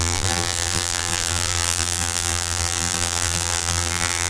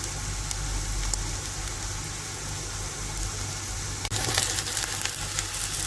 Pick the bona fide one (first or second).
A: second